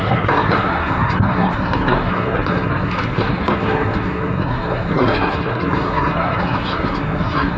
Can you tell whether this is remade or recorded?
remade